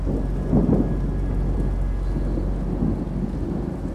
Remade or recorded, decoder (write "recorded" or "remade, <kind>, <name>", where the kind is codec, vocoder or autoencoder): recorded